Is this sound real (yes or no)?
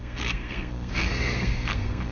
no